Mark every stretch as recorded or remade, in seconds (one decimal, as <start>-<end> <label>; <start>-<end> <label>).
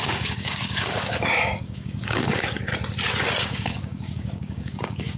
0.0-2.7 remade; 2.7-3.4 recorded; 3.4-5.2 remade